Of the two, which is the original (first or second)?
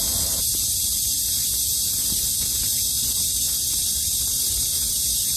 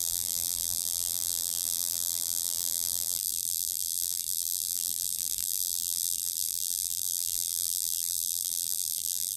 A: first